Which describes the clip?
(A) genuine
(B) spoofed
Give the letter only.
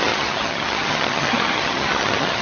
B